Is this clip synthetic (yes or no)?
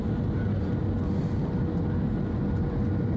no